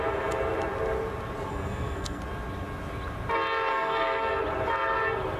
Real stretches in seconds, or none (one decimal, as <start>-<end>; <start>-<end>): 0.0-1.5; 2.2-3.7; 4.4-5.4

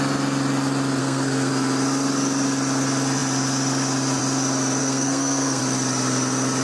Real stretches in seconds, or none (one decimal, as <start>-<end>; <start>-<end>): 0.0-1.0; 1.5-4.8; 5.6-6.6

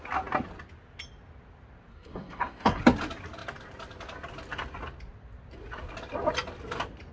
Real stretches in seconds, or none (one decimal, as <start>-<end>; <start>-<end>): 0.0-1.9; 2.8-7.1

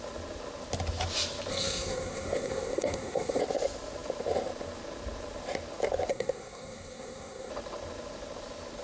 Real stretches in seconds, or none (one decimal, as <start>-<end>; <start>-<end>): 0.0-1.5; 3.4-6.1; 7.5-8.8

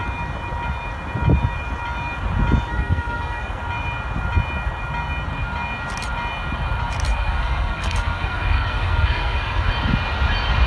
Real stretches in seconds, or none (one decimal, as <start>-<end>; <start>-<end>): 0.0-2.7; 3.6-7.1; 9.7-10.7